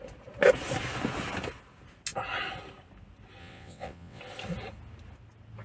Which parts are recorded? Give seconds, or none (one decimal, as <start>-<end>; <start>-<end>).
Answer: 0.0-3.4; 4.2-5.6